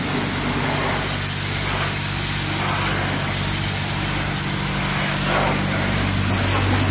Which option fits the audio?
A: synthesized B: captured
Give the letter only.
B